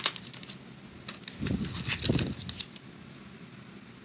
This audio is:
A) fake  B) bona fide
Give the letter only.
B